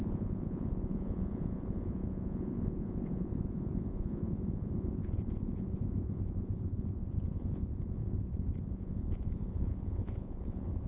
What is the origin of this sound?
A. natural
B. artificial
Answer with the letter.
B